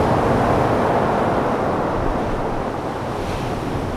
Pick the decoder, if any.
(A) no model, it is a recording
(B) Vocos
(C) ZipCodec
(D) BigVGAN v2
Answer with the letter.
A